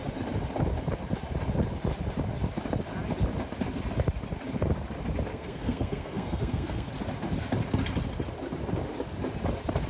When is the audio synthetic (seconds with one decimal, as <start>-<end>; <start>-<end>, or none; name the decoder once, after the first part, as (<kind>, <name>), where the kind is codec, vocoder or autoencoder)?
5.3-6.9 (codec, SNAC)